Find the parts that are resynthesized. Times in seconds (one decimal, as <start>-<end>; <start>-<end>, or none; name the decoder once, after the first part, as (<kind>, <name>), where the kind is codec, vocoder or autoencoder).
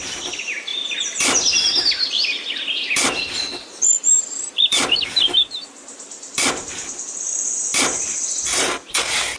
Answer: 0.7-5.4 (vocoder, BigVGAN v2); 7.7-8.6